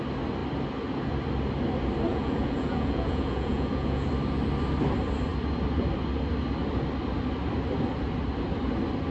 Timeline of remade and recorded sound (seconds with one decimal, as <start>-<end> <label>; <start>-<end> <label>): 0.0-2.1 recorded; 2.1-4.1 remade; 4.1-9.1 recorded